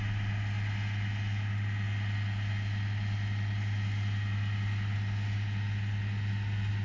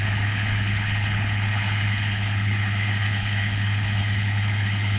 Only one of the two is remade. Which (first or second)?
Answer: second